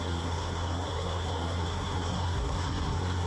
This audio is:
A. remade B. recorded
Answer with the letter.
A